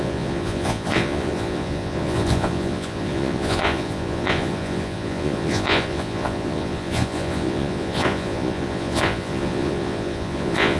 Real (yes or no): no